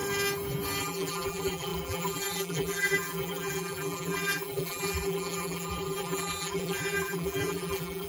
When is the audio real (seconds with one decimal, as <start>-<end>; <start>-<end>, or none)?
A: 0.0-0.8